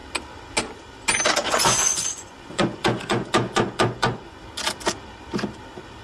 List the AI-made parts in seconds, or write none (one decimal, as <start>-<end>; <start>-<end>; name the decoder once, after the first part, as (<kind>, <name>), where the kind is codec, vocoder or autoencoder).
1.4-4.4 (vocoder, Vocos)